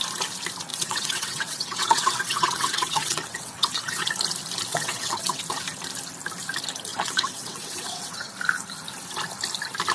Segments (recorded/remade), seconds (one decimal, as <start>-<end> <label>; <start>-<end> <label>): 0.0-0.7 recorded; 0.7-4.1 remade; 4.1-4.7 recorded; 4.7-5.4 remade; 5.4-6.9 recorded; 6.9-8.3 remade; 8.3-9.9 recorded